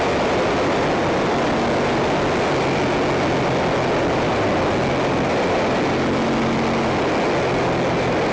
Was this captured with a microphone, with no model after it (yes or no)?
yes